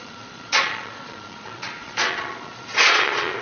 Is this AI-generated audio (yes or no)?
yes